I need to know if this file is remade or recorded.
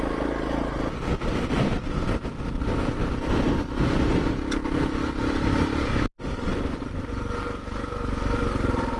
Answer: recorded